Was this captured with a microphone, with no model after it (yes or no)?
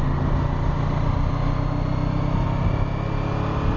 yes